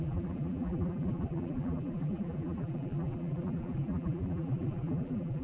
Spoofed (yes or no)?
yes